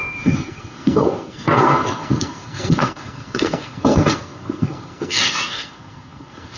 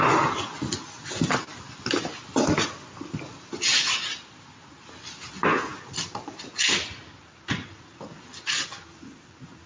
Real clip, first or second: second